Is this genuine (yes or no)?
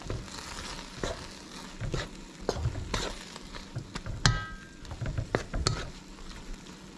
yes